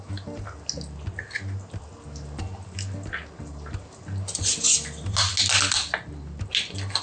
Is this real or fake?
real